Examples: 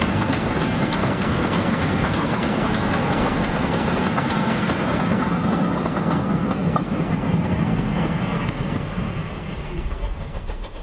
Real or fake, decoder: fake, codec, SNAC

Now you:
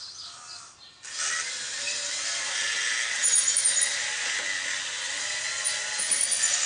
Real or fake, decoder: real